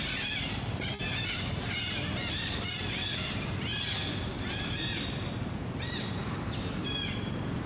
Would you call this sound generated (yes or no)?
no